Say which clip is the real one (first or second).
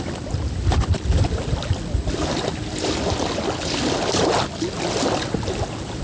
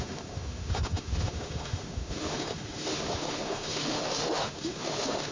first